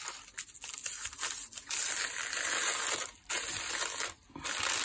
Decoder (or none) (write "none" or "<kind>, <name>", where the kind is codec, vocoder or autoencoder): none